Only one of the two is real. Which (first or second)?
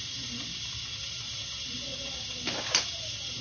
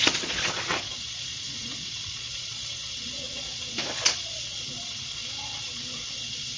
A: first